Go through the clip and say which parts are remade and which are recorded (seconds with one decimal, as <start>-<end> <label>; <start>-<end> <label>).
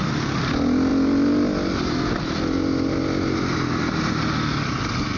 0.0-5.2 recorded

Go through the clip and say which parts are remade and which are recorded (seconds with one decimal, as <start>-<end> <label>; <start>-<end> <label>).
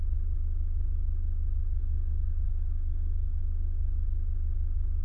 0.0-1.8 recorded; 1.8-3.4 remade; 3.4-5.0 recorded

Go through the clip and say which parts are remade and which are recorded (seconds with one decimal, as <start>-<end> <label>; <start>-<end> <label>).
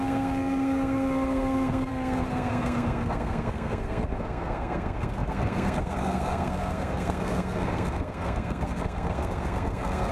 0.0-10.1 remade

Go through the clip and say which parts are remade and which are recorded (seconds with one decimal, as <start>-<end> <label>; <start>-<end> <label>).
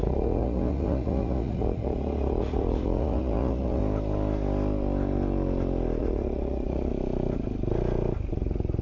0.0-3.8 remade; 3.8-6.0 recorded; 6.0-6.9 remade; 6.9-8.3 recorded; 8.3-8.8 remade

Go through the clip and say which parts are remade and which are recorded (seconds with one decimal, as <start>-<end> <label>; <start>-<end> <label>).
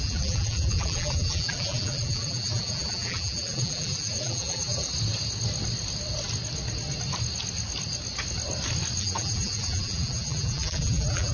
0.0-4.9 remade; 4.9-9.0 recorded; 9.0-11.3 remade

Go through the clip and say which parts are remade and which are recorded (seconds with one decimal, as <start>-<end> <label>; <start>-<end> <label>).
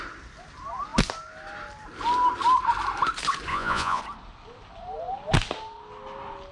0.0-3.5 recorded; 3.5-4.0 remade; 4.0-6.5 recorded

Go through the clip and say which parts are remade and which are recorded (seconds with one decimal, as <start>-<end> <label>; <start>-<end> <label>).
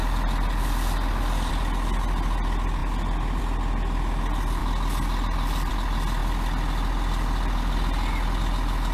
0.0-8.9 recorded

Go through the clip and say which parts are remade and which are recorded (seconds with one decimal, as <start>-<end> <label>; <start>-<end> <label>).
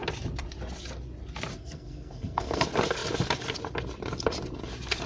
0.0-1.5 recorded; 1.5-2.6 remade; 2.6-5.1 recorded